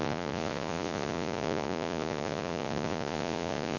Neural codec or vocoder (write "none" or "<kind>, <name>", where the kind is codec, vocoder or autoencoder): vocoder, Vocos